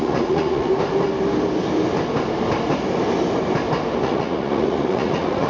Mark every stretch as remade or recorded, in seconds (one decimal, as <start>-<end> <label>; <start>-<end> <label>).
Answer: 0.0-0.7 remade; 0.7-4.0 recorded; 4.0-5.5 remade